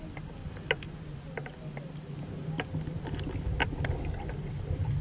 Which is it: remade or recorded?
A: recorded